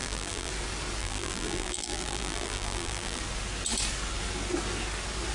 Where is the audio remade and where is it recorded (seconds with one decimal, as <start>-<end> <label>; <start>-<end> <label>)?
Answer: 0.0-0.5 remade; 0.5-1.0 recorded; 1.0-3.2 remade; 3.2-5.3 recorded